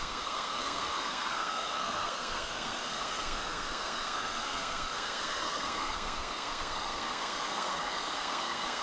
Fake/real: fake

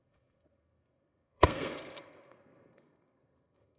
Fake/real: fake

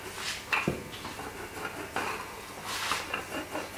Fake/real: real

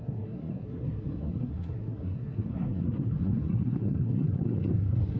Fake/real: fake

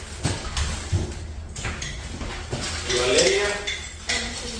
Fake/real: real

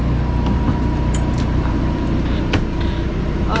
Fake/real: fake